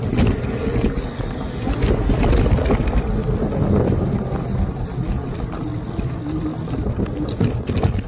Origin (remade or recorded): recorded